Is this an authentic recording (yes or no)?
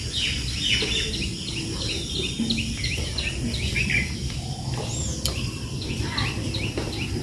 yes